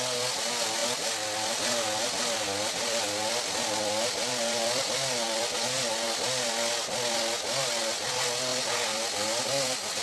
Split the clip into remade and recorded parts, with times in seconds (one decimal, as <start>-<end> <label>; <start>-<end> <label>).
0.0-0.8 recorded; 0.8-5.9 remade; 5.9-8.5 recorded; 8.5-9.4 remade; 9.4-10.0 recorded